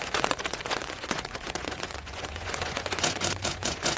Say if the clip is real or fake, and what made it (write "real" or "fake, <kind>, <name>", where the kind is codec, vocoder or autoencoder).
fake, vocoder, Vocos